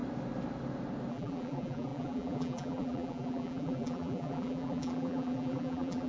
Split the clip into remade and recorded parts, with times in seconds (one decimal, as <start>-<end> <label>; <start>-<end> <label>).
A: 0.0-1.1 recorded; 1.1-6.1 remade

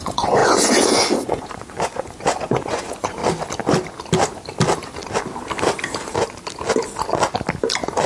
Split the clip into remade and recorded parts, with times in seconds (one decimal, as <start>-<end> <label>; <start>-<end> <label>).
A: 0.0-3.2 remade; 3.2-8.1 recorded

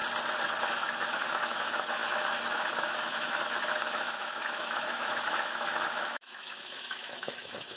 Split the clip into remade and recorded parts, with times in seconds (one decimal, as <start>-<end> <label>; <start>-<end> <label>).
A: 0.0-0.6 recorded; 0.6-7.8 remade

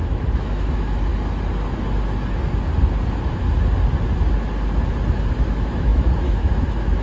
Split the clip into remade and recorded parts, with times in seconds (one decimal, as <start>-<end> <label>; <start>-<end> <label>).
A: 0.0-1.1 remade; 1.1-5.3 recorded; 5.3-7.0 remade

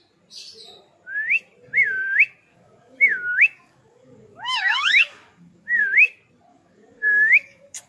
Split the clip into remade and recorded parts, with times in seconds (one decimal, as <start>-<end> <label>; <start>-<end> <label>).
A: 0.0-2.5 recorded; 2.5-5.8 remade; 5.8-6.5 recorded; 6.5-7.9 remade

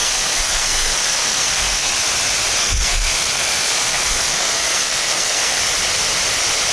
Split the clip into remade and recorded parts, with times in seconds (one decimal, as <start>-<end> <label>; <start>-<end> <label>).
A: 0.0-1.9 remade; 1.9-2.6 recorded; 2.6-5.6 remade; 5.6-6.7 recorded